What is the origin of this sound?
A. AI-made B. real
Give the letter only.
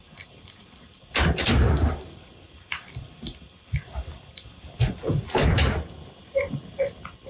B